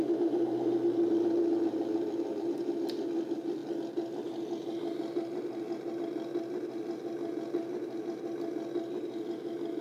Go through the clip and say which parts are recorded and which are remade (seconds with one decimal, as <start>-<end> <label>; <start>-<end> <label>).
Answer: 0.0-9.8 recorded